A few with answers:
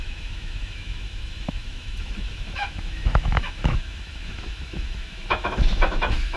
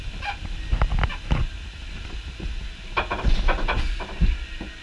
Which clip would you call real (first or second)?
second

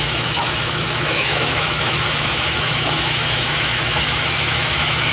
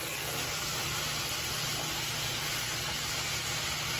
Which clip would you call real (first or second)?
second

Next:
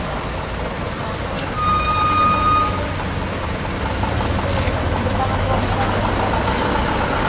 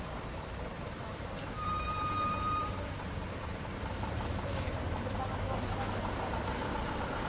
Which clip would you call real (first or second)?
first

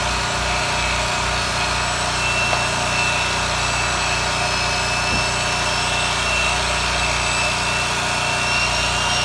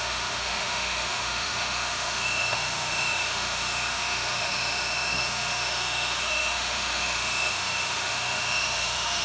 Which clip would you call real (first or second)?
first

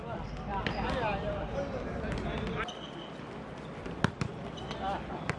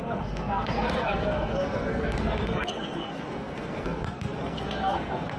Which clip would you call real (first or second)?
first